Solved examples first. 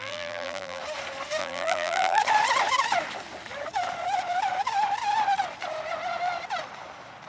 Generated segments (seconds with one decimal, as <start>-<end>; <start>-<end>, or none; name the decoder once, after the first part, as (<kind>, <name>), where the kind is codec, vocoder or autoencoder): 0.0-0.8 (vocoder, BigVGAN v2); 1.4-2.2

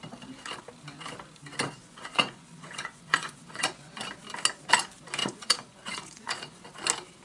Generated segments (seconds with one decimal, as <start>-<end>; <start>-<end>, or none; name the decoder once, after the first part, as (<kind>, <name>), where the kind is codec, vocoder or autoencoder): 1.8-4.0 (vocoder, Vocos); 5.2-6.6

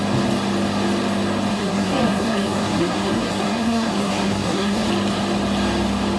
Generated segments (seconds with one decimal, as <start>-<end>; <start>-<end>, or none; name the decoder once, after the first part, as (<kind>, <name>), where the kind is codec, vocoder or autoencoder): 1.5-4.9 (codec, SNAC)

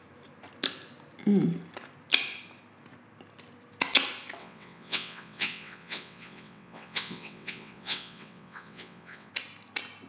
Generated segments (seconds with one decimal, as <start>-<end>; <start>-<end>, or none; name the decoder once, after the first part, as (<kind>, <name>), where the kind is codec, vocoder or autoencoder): 4.4-9.3 (vocoder, WaveNeXt)

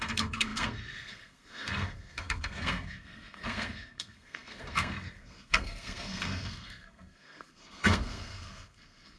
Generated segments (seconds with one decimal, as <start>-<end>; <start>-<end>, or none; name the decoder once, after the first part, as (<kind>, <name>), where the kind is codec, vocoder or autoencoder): 0.0-9.2 (codec, SNAC)

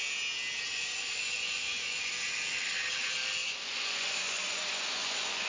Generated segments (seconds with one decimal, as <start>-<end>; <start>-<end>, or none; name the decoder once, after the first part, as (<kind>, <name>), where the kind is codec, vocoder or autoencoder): 0.7-2.1 (vocoder, Vocos); 3.4-5.5

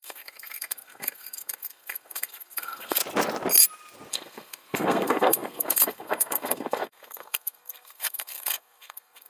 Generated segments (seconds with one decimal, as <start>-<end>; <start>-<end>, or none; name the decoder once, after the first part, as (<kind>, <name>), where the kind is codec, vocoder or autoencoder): 0.0-3.0 (codec, SNAC); 4.1-9.3

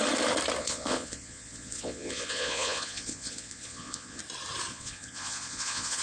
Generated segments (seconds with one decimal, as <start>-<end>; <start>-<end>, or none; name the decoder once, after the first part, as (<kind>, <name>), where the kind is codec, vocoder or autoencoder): 0.6-4.2 (vocoder, Vocos); 4.7-6.0